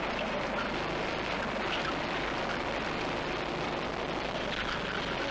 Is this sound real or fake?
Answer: real